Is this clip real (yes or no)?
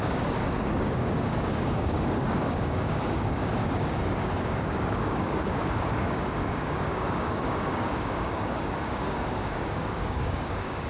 no